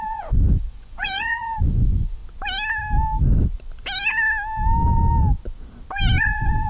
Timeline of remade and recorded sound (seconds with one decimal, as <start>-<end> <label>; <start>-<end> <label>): 0.0-2.2 remade; 2.2-6.2 recorded; 6.2-6.7 remade